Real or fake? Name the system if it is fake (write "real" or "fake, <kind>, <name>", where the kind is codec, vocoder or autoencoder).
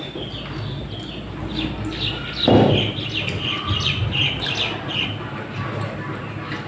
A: real